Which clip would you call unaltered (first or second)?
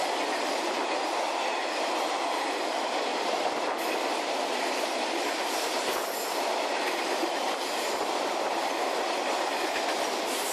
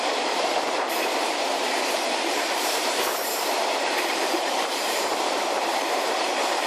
first